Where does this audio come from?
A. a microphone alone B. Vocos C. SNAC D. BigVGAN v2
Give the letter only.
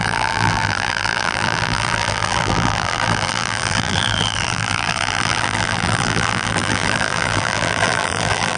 D